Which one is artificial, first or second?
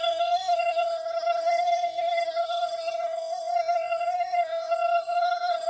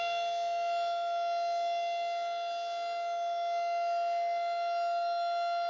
first